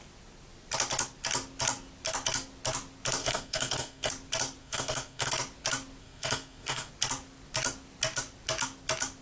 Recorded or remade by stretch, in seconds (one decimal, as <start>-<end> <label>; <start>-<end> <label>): 0.0-3.2 recorded; 3.2-4.1 remade; 4.1-4.6 recorded; 4.6-5.3 remade; 5.3-6.0 recorded; 6.0-6.9 remade; 6.9-9.2 recorded